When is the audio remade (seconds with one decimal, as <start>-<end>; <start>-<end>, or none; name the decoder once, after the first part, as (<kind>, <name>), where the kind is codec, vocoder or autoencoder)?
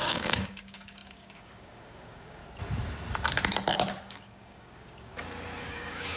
0.0-2.4 (codec, DAC); 4.0-5.1; 5.6-6.2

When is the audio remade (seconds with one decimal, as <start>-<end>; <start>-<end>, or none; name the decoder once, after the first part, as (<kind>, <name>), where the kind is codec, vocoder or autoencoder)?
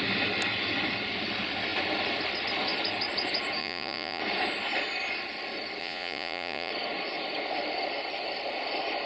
3.6-4.2 (vocoder, Vocos); 5.8-6.7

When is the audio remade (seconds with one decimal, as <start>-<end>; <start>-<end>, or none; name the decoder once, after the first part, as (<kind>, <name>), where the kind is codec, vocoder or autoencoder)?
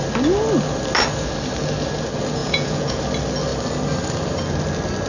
2.4-3.0 (vocoder, Vocos)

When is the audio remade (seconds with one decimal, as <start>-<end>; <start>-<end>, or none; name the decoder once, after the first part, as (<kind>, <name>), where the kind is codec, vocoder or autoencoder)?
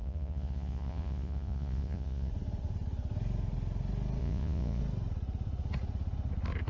0.0-2.3 (vocoder, Vocos); 4.2-4.8